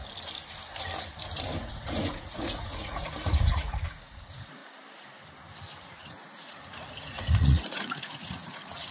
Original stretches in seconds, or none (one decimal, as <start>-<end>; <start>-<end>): 0.0-1.6; 4.6-5.8